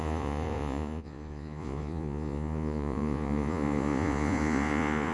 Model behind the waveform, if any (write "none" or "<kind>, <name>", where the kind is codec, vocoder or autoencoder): vocoder, Vocos